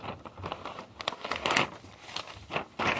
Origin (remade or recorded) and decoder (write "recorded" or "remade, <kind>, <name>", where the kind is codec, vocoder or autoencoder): recorded